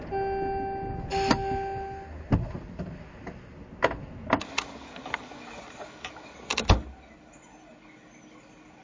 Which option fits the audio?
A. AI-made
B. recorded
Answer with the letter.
B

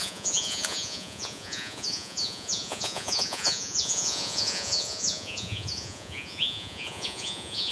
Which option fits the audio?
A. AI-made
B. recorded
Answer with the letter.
A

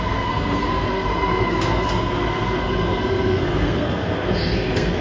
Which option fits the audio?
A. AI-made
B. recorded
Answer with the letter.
A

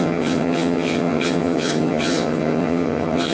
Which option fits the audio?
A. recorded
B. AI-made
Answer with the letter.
B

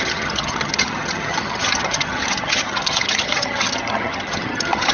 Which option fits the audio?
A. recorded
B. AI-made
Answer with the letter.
B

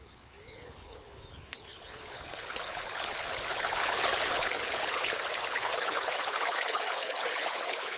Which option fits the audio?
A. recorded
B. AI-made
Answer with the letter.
B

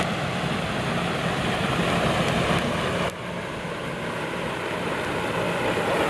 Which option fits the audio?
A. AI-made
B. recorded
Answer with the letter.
B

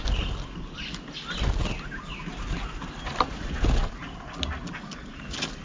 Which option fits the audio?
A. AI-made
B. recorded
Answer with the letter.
B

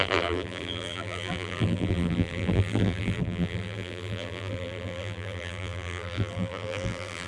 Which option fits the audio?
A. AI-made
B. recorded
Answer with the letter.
A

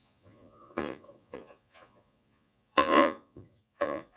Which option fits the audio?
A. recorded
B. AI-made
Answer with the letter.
B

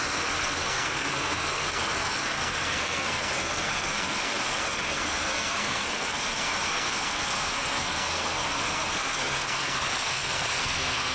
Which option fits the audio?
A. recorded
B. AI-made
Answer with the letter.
B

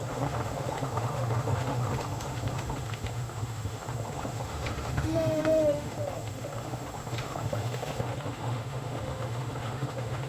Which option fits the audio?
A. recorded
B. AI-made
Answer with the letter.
B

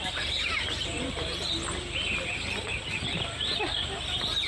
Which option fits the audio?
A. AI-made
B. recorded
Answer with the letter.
B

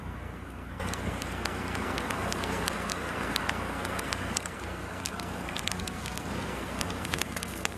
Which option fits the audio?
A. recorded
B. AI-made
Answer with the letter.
B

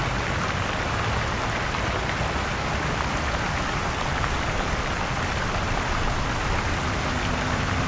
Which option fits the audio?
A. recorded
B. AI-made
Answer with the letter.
A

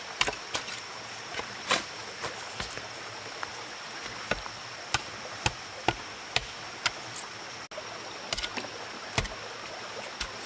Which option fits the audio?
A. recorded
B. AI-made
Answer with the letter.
A